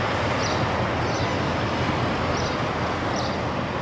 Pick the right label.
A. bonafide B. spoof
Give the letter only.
A